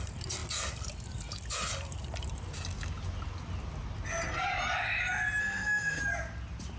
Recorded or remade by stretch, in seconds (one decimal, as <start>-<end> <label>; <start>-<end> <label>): 0.0-5.4 recorded; 5.4-6.0 remade; 6.0-6.8 recorded